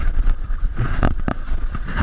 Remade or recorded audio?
remade